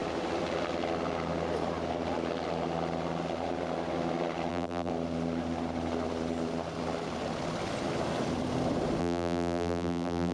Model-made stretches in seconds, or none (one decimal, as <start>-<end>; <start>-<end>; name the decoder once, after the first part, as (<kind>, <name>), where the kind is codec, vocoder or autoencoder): 4.5-4.9 (vocoder, BigVGAN v2); 9.0-10.3

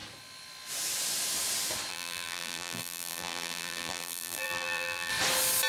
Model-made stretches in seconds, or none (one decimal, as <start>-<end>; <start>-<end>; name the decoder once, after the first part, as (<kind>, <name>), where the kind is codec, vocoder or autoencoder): 1.9-5.1 (vocoder, BigVGAN v2)